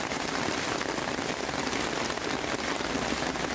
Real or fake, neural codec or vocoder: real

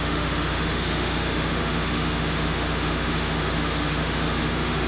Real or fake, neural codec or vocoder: fake, autoencoder, DAC-VAE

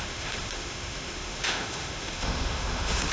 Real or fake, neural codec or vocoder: fake, autoencoder, DAC-VAE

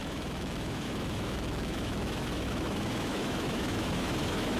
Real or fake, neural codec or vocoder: fake, autoencoder, DAC-VAE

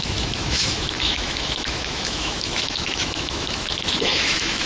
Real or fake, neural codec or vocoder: fake, autoencoder, DAC-VAE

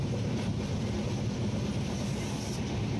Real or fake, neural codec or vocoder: real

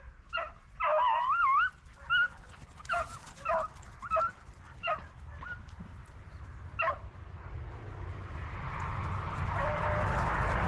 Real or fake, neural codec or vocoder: real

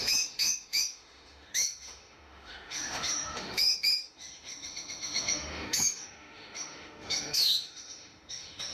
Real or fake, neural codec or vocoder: fake, autoencoder, DAC-VAE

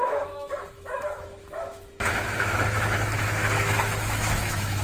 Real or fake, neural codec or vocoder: fake, autoencoder, DAC-VAE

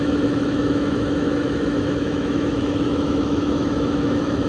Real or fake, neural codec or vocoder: fake, autoencoder, DAC-VAE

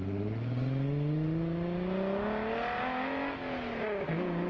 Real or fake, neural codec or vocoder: real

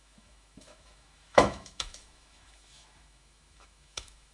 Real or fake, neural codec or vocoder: fake, autoencoder, DAC-VAE